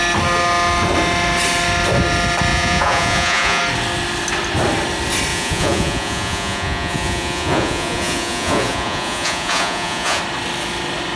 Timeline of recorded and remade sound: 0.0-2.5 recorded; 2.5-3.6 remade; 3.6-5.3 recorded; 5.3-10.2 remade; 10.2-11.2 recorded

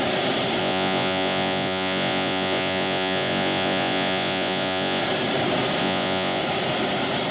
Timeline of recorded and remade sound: 0.0-0.6 recorded; 0.6-5.0 remade; 5.0-5.8 recorded; 5.8-6.4 remade; 6.4-7.3 recorded

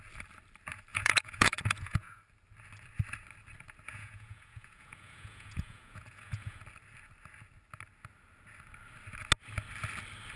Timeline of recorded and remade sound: 0.0-0.9 recorded; 0.9-2.2 remade; 2.2-3.9 recorded; 3.9-6.6 remade; 6.6-10.4 recorded

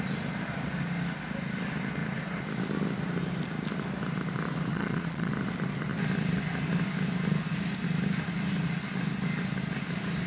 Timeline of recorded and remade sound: 0.0-4.7 recorded; 4.7-5.3 remade; 5.3-10.3 recorded

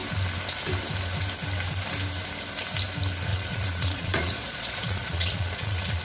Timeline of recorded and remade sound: 0.0-3.3 recorded; 3.3-6.0 remade

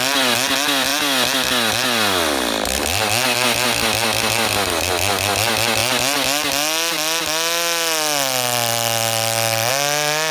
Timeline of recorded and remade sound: 0.0-10.3 recorded

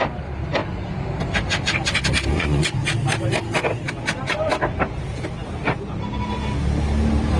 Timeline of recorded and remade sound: 0.0-2.3 recorded; 2.3-2.8 remade; 2.8-7.4 recorded

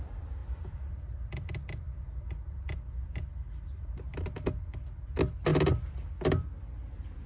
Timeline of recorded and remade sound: 0.0-7.3 recorded